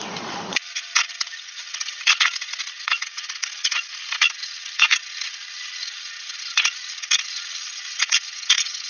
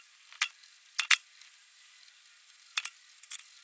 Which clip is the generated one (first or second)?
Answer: first